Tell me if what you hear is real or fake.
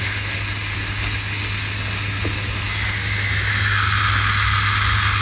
real